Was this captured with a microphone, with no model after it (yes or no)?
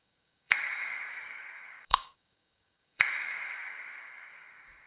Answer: no